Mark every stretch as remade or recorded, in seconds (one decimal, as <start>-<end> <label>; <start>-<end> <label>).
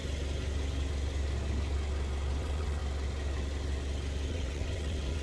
0.0-2.4 recorded; 2.4-2.8 remade; 2.8-4.3 recorded; 4.3-5.2 remade